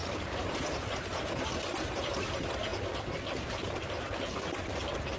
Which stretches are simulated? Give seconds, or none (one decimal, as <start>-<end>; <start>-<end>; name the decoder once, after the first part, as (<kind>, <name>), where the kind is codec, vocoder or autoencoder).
2.7-4.3 (vocoder, BigVGAN v2)